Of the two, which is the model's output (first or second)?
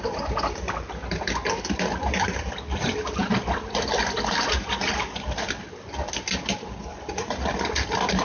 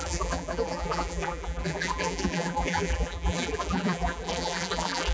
second